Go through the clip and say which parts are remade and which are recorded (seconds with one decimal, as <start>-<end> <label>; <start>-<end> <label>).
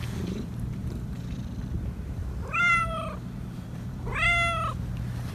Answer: 0.0-0.8 remade; 0.8-2.6 recorded; 2.6-4.1 remade; 4.1-5.3 recorded